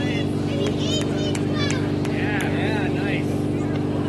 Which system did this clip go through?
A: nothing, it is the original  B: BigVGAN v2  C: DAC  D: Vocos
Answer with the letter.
A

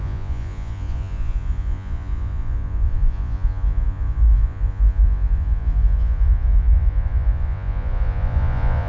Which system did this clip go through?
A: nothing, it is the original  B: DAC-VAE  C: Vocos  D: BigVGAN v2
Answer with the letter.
C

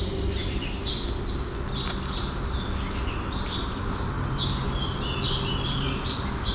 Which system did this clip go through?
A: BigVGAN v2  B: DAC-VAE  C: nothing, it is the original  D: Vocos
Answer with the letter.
C